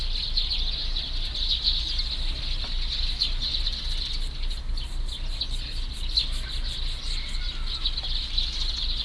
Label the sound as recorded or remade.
recorded